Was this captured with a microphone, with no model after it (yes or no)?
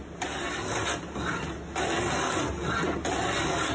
yes